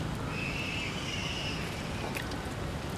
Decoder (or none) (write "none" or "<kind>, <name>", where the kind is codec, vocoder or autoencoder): none